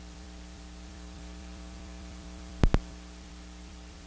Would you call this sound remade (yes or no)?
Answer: yes